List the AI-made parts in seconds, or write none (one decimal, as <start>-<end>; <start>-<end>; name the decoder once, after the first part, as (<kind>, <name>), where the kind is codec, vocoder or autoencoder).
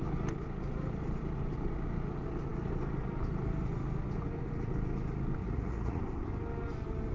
5.4-6.0 (vocoder, Vocos)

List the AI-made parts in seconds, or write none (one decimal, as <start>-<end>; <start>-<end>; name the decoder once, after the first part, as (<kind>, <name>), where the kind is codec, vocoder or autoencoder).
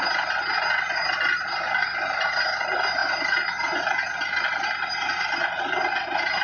none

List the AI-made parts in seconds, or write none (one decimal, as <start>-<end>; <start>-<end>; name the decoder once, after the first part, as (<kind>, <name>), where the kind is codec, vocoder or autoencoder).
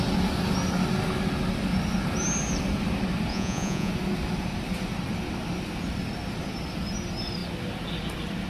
3.3-3.9 (vocoder, Vocos)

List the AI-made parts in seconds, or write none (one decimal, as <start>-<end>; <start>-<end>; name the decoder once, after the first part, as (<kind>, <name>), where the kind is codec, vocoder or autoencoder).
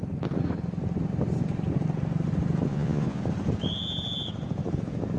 2.7-3.2 (vocoder, Vocos)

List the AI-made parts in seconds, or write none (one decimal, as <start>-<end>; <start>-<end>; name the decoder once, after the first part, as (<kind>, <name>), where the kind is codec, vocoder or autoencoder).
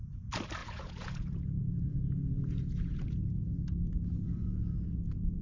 0.6-3.2 (vocoder, Vocos)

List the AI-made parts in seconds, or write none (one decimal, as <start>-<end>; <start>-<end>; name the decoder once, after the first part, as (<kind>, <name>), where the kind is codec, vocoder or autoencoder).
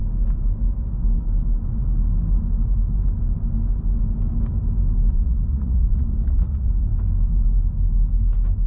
5.1-6.9 (vocoder, Vocos)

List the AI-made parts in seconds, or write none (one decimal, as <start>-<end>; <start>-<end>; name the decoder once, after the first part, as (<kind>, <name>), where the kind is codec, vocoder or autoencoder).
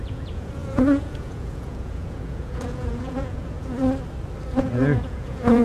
0.0-3.8 (vocoder, Vocos); 4.6-5.6